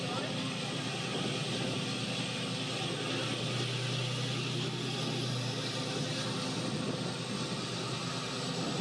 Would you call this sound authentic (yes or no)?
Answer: yes